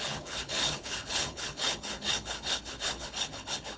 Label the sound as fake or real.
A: fake